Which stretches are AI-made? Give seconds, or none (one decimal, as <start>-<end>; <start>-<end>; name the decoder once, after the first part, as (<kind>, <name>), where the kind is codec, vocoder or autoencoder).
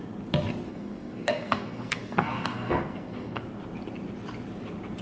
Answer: 0.7-3.4 (codec, SNAC)